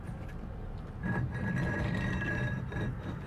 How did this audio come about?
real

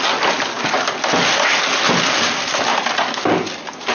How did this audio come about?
real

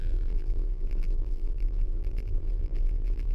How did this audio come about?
fake